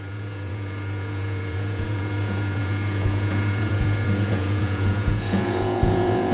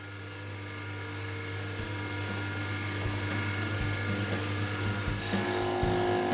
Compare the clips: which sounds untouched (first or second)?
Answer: second